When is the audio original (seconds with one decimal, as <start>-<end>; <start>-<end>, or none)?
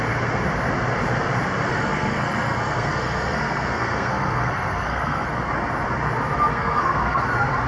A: 0.0-1.7; 5.5-6.5; 7.2-7.7